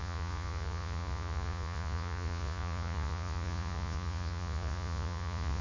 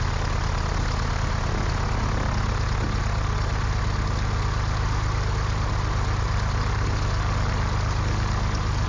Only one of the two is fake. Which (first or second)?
first